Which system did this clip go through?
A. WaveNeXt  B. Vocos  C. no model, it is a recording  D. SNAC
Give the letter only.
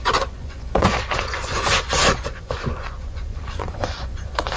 B